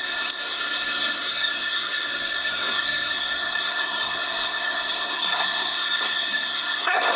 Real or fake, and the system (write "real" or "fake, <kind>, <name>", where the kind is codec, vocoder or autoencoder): fake, codec, SNAC